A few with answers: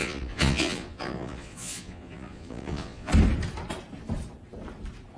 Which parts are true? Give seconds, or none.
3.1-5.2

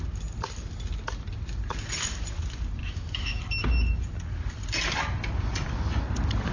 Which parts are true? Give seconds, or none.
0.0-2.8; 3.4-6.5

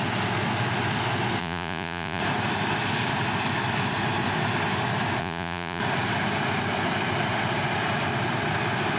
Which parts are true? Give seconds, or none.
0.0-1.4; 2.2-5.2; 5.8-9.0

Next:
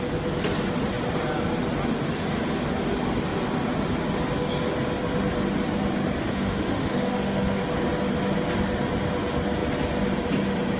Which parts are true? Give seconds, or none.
0.0-6.2; 7.6-10.8

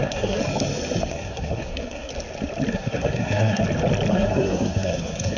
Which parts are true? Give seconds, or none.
0.4-1.1; 2.1-2.7; 3.6-4.1